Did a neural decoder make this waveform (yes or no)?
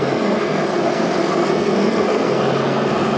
yes